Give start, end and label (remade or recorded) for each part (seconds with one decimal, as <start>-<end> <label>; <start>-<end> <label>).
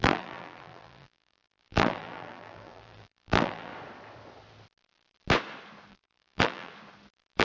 0.0-3.7 remade; 3.7-5.9 recorded; 5.9-6.7 remade; 6.7-7.4 recorded